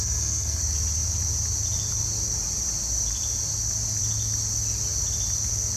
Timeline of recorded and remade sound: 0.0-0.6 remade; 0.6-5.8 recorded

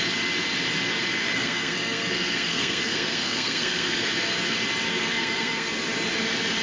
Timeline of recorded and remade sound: 0.0-1.2 recorded; 1.2-4.0 remade; 4.0-4.9 recorded; 4.9-5.7 remade; 5.7-6.6 recorded